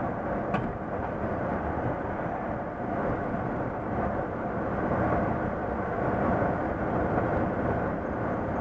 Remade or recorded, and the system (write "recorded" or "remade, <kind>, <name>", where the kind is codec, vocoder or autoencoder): recorded